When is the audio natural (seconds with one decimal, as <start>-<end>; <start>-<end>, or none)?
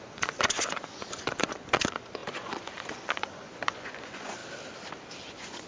4.4-5.2